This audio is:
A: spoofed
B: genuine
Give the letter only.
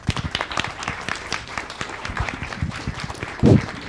A